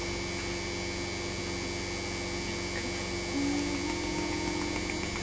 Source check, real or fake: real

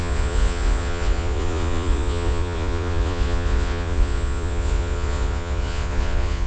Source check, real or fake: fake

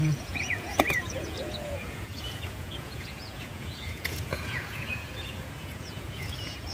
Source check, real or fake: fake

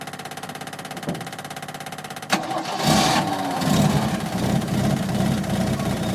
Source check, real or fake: real